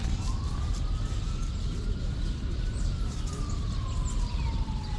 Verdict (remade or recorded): recorded